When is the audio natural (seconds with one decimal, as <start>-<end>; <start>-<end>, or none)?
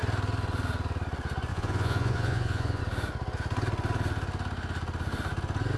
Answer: 0.0-1.5; 2.8-5.8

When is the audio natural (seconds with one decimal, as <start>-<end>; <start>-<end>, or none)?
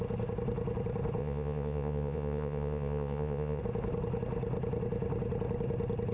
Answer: 0.0-1.2; 3.6-6.1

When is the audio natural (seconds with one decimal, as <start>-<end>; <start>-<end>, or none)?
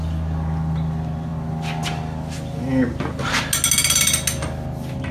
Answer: 0.0-5.1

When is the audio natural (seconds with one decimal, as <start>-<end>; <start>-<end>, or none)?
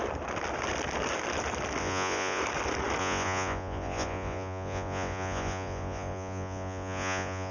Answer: 0.0-1.8; 2.4-3.0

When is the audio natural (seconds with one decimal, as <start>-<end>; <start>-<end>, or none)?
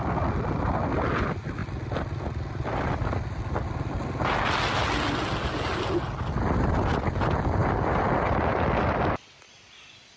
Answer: 0.0-10.2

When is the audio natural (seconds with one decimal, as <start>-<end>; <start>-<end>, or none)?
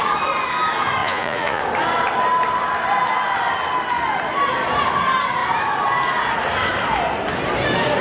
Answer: 0.0-1.0; 1.6-8.0